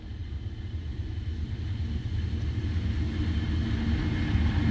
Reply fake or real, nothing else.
real